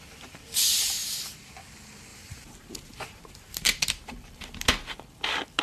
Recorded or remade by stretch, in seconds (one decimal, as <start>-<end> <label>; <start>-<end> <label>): 0.0-1.0 recorded; 1.0-1.5 remade; 1.5-2.1 recorded; 2.1-3.8 remade; 3.8-5.6 recorded